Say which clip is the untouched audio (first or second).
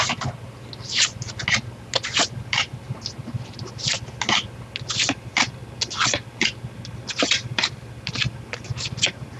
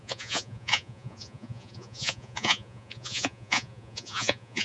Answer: first